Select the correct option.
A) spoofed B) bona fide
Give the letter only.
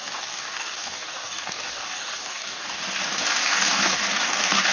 A